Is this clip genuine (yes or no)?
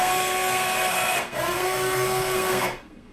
no